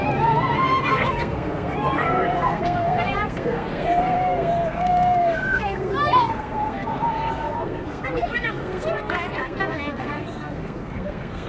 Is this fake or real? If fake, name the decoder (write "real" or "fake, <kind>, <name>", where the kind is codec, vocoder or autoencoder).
fake, codec, SNAC